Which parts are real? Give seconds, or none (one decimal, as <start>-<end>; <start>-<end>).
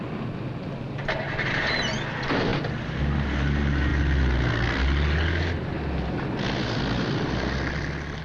0.0-8.2